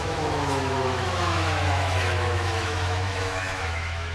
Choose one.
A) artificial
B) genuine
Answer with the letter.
A